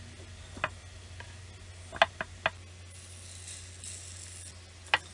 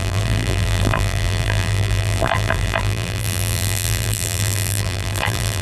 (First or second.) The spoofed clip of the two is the second